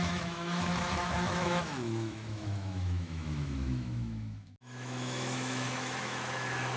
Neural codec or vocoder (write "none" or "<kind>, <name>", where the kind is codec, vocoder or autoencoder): autoencoder, DAC-VAE